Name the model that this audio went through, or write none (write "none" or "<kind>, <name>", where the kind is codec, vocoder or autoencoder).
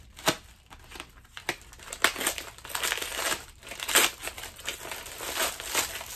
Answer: none